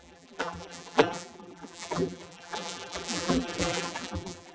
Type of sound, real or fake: fake